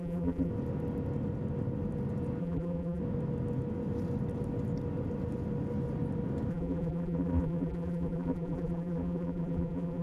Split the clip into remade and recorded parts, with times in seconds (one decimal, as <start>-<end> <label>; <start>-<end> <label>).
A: 0.0-0.5 remade; 0.5-2.4 recorded; 2.4-3.0 remade; 3.0-6.5 recorded; 6.5-10.0 remade